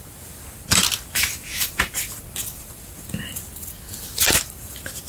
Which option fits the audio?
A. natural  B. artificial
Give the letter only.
B